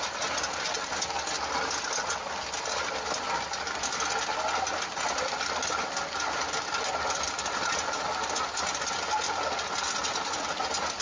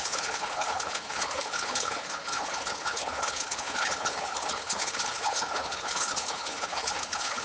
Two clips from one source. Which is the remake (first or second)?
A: second